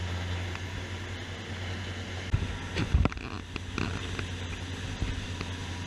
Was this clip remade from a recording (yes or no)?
no